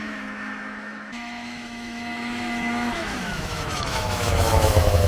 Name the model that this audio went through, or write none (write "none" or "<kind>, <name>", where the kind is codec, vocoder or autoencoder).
autoencoder, DAC-VAE